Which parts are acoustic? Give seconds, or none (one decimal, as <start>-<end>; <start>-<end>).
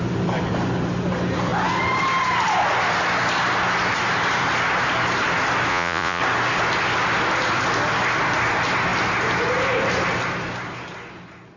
0.0-5.7; 6.2-11.6